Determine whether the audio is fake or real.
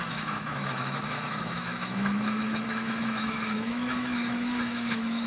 fake